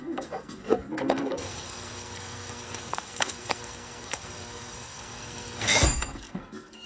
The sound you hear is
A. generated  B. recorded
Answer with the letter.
A